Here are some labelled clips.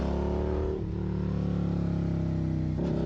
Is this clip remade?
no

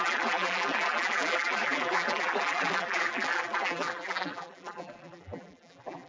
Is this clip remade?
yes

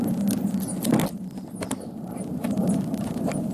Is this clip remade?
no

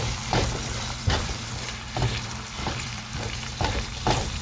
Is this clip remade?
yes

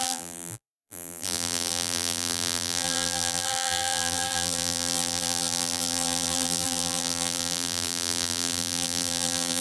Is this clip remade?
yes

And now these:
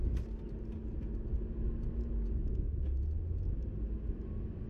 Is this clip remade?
no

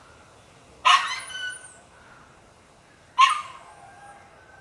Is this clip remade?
no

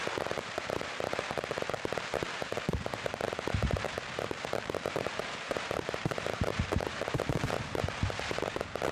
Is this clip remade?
yes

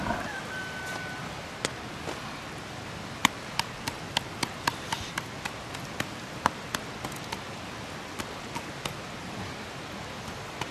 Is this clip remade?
no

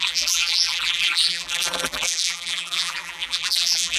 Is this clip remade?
yes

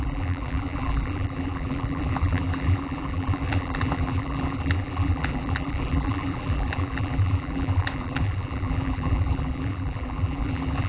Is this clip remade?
yes